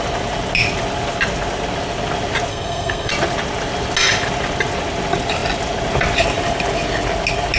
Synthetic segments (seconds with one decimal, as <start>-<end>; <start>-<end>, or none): 2.5-3.1